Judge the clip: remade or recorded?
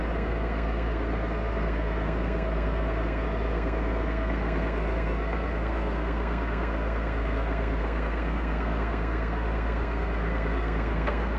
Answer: remade